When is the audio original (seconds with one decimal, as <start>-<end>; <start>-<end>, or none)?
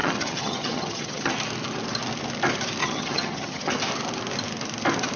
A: 1.3-2.8; 3.7-5.2